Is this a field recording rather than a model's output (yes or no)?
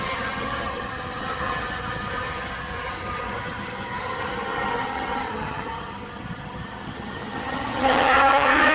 no